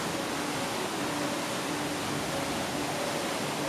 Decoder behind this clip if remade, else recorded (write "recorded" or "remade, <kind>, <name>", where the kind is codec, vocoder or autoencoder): recorded